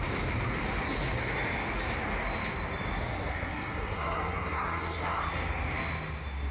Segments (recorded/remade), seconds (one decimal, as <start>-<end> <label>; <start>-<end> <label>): 0.0-3.2 recorded; 3.2-5.2 remade; 5.2-6.5 recorded